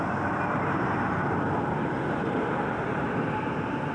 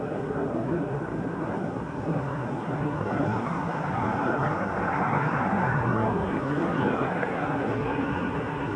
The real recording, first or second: first